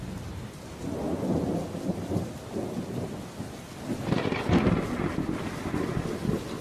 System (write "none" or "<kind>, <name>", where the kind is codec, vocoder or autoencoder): none